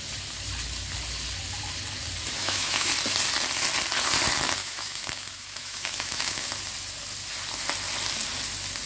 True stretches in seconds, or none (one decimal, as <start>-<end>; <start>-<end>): 0.0-2.4; 2.9-4.6; 6.5-8.9